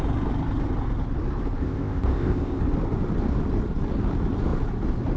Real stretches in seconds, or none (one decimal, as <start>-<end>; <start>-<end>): 0.0-1.6; 2.6-5.2